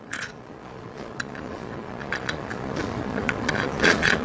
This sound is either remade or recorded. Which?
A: remade